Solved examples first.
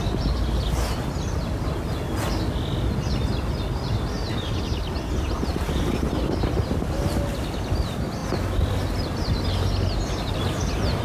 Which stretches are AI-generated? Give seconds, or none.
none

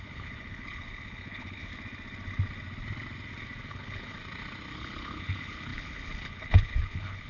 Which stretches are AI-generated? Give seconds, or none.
0.0-1.7 (codec, HILCodec); 3.7-4.2; 4.7-7.3